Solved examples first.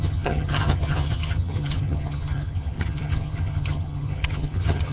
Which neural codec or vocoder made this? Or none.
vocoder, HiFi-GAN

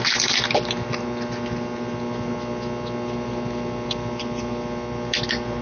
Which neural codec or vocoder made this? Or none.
none